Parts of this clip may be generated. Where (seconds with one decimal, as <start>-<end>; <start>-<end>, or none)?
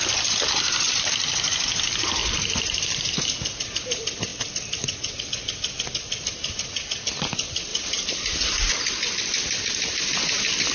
7.7-8.7